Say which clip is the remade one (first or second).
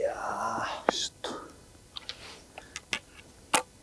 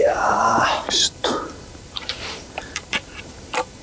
second